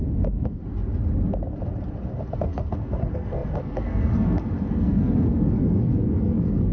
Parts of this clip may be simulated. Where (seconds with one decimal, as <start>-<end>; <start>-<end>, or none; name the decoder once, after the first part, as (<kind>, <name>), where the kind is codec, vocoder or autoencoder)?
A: 0.0-0.6 (codec, SNAC); 2.3-6.7